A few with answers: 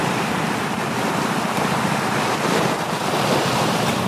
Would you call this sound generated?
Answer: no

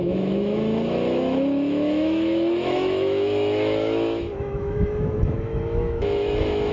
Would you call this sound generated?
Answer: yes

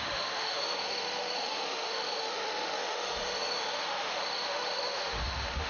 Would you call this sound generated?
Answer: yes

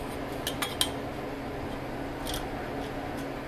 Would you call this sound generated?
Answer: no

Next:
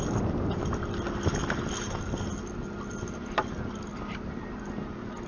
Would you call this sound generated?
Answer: no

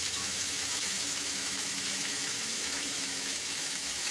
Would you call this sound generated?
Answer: yes